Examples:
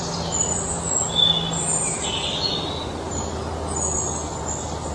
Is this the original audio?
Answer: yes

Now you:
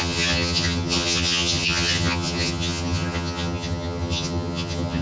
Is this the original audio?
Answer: no